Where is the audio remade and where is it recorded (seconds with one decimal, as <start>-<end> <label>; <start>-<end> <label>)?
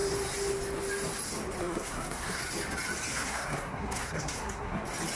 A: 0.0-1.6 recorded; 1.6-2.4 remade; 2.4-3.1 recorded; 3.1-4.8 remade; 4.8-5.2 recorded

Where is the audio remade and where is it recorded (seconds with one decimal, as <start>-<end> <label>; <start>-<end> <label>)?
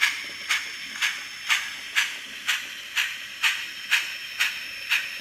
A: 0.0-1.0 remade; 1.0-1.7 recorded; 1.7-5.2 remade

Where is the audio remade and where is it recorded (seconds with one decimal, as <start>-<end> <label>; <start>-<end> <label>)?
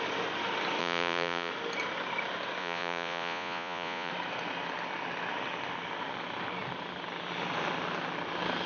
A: 0.0-0.8 recorded; 0.8-1.5 remade; 1.5-2.6 recorded; 2.6-4.1 remade; 4.1-8.7 recorded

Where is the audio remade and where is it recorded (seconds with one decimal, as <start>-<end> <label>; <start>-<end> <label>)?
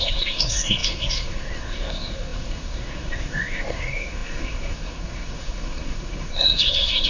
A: 0.0-7.1 remade